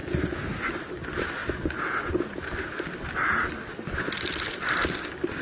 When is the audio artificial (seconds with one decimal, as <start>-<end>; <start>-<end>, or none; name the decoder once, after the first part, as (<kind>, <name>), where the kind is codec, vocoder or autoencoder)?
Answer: none